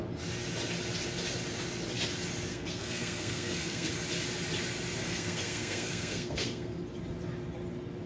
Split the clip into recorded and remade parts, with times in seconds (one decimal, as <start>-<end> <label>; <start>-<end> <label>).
0.0-2.5 recorded; 2.5-3.9 remade; 3.9-5.0 recorded; 5.0-6.8 remade; 6.8-8.1 recorded